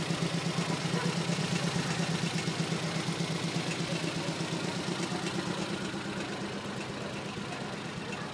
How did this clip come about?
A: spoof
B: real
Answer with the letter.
B